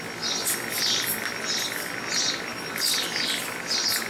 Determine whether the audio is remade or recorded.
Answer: recorded